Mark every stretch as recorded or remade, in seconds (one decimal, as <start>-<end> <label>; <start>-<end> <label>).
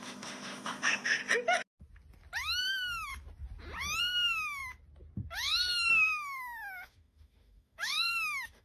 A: 0.0-1.2 remade; 1.2-2.6 recorded; 2.6-3.1 remade; 3.1-4.0 recorded; 4.0-4.6 remade; 4.6-5.9 recorded; 5.9-8.6 remade